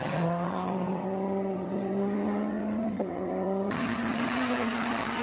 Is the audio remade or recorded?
remade